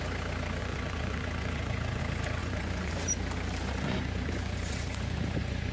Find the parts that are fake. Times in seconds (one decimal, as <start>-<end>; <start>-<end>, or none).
0.6-2.0; 2.4-2.9; 3.6-5.7